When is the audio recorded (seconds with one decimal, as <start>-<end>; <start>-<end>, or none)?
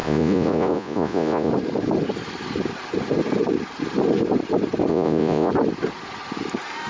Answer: 1.5-4.9; 5.5-6.9